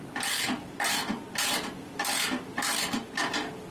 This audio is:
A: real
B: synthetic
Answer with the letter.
A